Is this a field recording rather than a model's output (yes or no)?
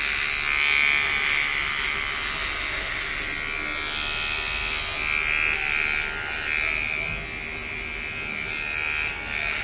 yes